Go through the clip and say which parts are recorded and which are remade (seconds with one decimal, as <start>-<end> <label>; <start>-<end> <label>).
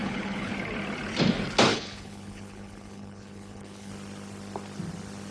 0.0-0.5 remade; 0.5-1.7 recorded; 1.7-3.9 remade; 3.9-5.3 recorded